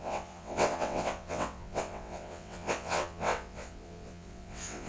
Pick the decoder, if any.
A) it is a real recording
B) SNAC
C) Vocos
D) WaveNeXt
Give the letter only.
D